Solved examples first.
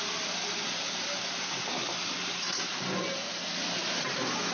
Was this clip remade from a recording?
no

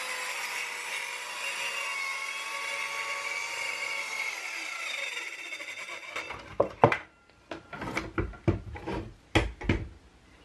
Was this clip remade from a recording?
no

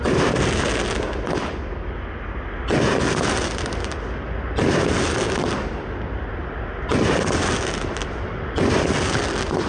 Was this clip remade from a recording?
no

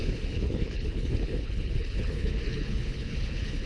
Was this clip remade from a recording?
yes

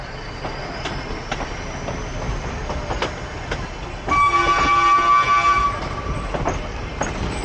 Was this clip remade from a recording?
no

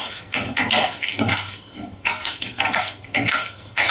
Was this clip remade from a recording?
yes